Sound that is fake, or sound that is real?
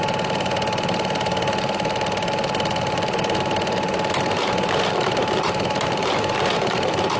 fake